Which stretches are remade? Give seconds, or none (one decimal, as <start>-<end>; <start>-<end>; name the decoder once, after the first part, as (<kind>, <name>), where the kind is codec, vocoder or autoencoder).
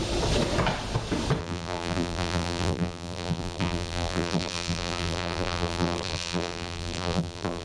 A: 1.4-7.6 (vocoder, BigVGAN v2)